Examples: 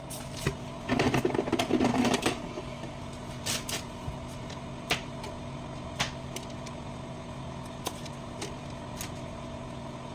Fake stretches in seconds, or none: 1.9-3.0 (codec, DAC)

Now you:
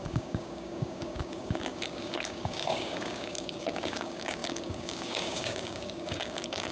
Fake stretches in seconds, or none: 0.0-6.7 (codec, DAC)